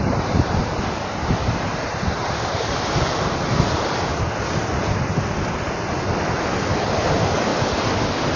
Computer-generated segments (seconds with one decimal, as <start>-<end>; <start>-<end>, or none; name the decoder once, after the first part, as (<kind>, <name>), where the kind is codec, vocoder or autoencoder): 0.0-4.1 (vocoder, BigVGAN v2); 6.8-7.5